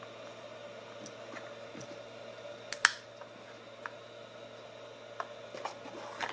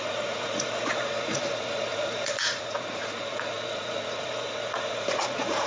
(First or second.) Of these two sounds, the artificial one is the second